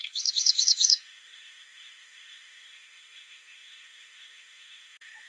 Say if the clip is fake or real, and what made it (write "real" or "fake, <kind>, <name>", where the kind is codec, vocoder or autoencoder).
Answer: fake, autoencoder, DAC-VAE